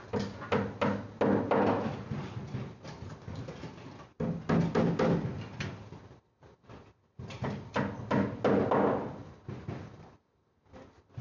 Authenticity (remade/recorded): recorded